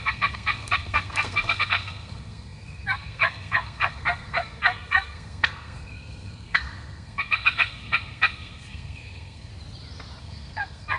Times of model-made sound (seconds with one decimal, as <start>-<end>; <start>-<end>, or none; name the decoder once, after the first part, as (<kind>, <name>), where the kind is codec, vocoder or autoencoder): 0.0-9.5 (codec, SNAC); 10.2-11.0

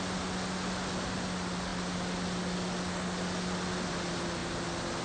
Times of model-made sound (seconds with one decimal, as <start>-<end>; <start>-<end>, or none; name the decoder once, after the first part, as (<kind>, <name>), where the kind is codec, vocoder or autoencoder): none

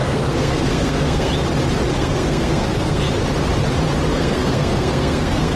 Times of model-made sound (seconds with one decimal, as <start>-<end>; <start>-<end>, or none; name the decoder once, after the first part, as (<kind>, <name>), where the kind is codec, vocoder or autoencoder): 0.0-1.3 (codec, SNAC); 1.9-3.1; 4.1-5.6

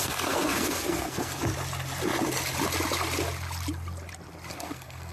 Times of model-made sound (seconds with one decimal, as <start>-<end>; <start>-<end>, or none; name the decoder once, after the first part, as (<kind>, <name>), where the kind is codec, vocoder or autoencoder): 0.0-1.4 (codec, SNAC); 4.5-5.1

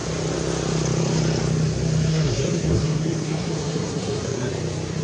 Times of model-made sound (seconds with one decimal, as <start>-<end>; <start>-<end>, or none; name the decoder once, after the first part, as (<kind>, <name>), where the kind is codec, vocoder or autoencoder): 2.1-4.5 (codec, SNAC)